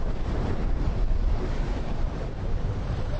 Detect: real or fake fake